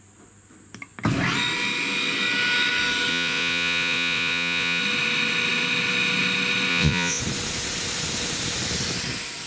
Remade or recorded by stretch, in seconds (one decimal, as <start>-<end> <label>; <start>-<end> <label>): 0.0-3.1 recorded; 3.1-4.8 remade; 4.8-6.7 recorded; 6.7-7.2 remade; 7.2-9.5 recorded